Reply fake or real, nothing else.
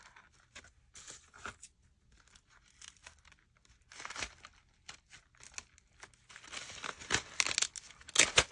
real